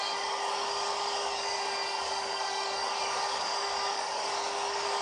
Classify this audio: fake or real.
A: fake